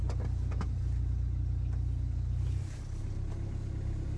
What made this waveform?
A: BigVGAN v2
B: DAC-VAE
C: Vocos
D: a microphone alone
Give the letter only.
D